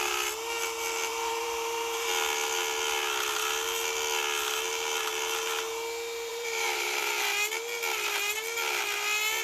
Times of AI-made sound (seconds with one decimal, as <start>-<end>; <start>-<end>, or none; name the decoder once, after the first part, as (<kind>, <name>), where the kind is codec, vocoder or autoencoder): 1.1-2.1 (vocoder, BigVGAN v2); 6.3-7.1

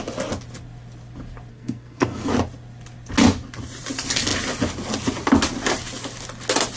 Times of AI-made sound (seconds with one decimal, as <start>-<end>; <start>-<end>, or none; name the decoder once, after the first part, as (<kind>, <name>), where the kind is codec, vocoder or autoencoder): 1.5-2.3 (codec, SNAC)

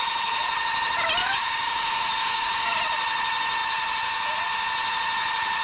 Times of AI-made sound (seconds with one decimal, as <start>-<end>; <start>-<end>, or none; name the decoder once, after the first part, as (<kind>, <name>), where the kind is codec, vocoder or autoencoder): 1.2-2.8 (codec, DAC)

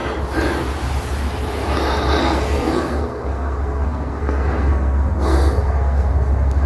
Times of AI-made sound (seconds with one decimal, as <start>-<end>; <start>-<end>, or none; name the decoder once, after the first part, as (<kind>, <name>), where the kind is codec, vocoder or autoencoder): 2.2-6.7 (codec, SNAC)

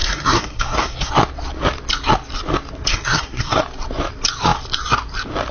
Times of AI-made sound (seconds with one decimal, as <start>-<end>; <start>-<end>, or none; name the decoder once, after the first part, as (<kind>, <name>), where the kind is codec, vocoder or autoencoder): 0.0-1.1 (codec, SNAC); 2.9-3.6

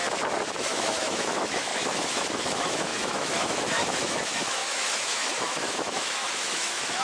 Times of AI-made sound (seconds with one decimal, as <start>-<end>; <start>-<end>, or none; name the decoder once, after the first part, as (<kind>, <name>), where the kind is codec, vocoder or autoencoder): 0.5-7.0 (autoencoder, DAC-VAE)

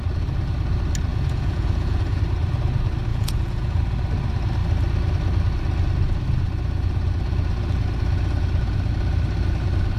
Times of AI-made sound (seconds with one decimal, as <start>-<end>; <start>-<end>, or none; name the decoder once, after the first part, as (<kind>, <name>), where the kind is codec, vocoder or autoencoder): 1.1-2.2 (vocoder, Vocos); 3.1-3.8